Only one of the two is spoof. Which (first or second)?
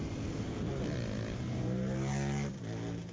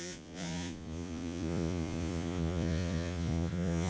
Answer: second